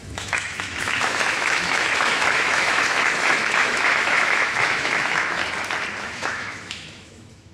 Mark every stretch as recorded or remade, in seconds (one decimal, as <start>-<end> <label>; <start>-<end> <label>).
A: 0.0-5.4 remade; 5.4-6.0 recorded; 6.0-7.5 remade